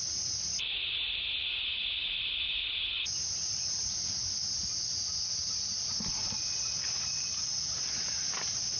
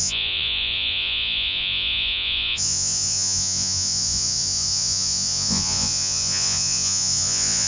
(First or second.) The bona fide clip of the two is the first